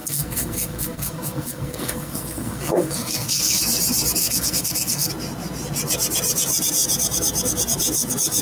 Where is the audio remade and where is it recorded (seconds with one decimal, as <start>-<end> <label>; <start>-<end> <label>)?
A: 0.0-3.6 remade; 3.6-4.2 recorded; 4.2-5.1 remade; 5.1-8.4 recorded